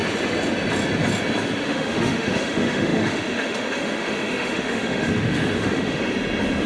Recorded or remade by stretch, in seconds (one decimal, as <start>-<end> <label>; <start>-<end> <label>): 0.0-1.6 recorded; 1.6-6.0 remade; 6.0-6.7 recorded